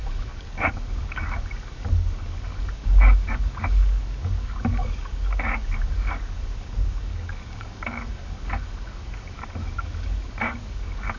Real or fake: fake